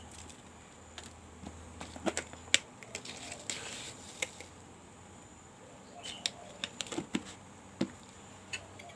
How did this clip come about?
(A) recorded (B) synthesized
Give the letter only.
A